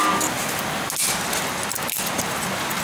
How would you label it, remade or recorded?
recorded